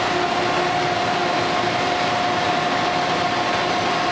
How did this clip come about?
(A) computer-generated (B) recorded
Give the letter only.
B